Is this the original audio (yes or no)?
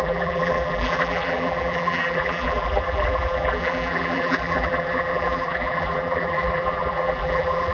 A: no